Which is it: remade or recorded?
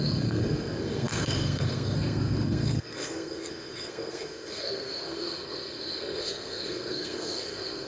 remade